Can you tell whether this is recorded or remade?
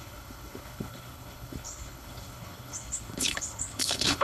remade